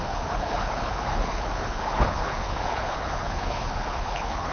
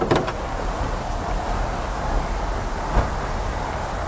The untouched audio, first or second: second